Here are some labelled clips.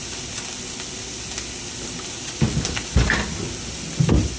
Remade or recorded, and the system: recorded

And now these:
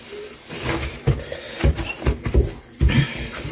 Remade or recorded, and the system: remade, vocoder, BigVGAN v2